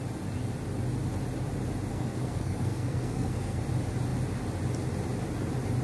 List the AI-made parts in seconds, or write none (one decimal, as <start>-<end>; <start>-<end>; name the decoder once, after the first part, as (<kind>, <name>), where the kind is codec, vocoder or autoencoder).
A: 1.9-3.6 (codec, SNAC)